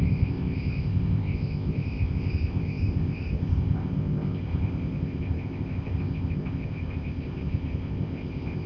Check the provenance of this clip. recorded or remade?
remade